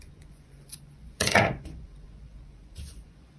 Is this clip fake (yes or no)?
yes